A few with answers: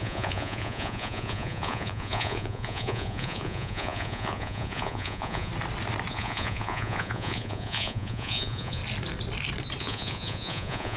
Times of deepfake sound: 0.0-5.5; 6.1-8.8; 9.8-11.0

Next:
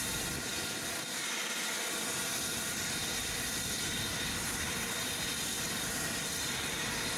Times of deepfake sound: none

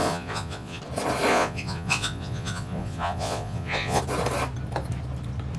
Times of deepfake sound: 0.0-0.8; 1.3-4.0

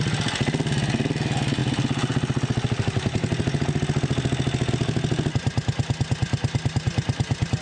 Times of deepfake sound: none

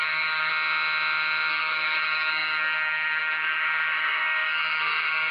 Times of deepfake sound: 0.0-0.5; 1.5-5.3

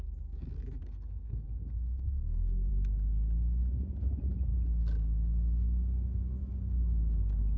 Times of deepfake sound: 0.8-2.7

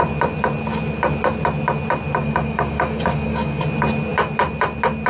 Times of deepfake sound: 2.2-3.6